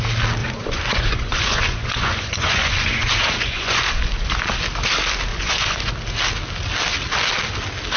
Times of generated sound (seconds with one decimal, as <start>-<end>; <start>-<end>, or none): 0.4-4.3; 5.3-5.9